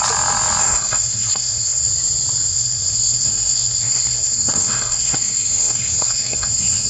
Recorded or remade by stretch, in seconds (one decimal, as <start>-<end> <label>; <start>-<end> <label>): 0.0-0.6 recorded; 0.6-1.9 remade; 1.9-2.5 recorded; 2.5-6.9 remade